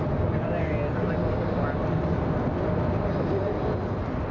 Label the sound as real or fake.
real